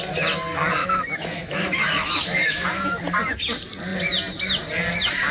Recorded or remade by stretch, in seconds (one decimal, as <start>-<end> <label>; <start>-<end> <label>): 0.0-0.8 recorded; 0.8-3.0 remade; 3.0-5.3 recorded

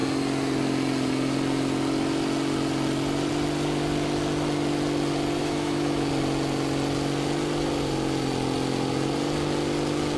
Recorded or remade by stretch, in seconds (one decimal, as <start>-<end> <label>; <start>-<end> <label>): 0.0-5.4 recorded; 5.4-6.1 remade; 6.1-10.2 recorded

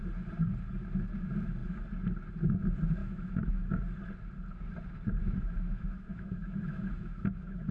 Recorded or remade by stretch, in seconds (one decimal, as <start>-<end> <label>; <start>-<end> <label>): 0.0-3.0 recorded; 3.0-3.8 remade; 3.8-5.2 recorded; 5.2-7.7 remade

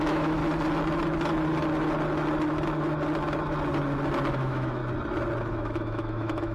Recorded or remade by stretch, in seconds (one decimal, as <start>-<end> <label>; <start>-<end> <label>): 0.0-0.4 remade; 0.4-4.3 recorded; 4.3-4.8 remade; 4.8-5.5 recorded; 5.5-6.5 remade